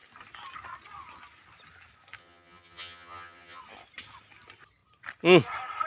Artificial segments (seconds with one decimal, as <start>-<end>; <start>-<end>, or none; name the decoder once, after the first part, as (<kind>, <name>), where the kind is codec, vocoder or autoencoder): 2.2-3.6 (vocoder, HiFi-GAN)